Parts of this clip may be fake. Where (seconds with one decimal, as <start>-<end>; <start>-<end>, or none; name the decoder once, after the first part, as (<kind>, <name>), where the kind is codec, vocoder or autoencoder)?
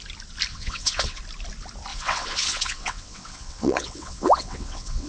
0.5-1.2 (vocoder, WaveNeXt); 1.9-5.1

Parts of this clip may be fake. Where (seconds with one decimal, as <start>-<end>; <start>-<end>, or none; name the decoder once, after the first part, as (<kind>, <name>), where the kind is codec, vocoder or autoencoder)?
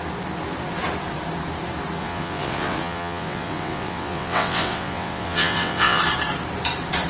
2.0-6.0 (vocoder, WaveNeXt)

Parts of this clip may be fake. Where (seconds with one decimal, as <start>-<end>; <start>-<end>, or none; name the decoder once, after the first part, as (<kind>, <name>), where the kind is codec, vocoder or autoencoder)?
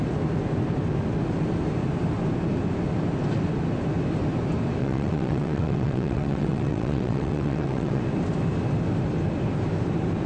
4.8-8.0 (vocoder, WaveNeXt)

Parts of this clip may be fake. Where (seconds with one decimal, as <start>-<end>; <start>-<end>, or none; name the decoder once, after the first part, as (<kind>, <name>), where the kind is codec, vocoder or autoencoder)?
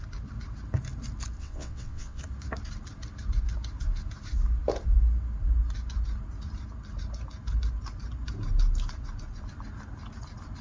1.4-2.2 (vocoder, WaveNeXt)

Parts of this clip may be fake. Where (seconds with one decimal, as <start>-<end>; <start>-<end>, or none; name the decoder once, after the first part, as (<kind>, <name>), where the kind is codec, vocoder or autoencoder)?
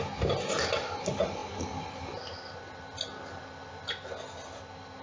none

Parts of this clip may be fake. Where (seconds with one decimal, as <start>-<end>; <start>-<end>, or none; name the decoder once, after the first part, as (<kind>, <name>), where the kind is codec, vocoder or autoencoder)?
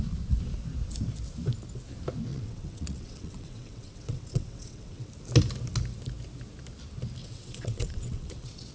2.3-5.1 (vocoder, WaveNeXt); 7.2-8.7